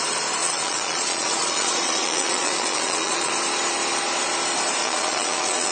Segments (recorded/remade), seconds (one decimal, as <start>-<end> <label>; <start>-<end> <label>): 0.0-0.4 recorded; 0.4-3.3 remade; 3.3-4.8 recorded; 4.8-5.7 remade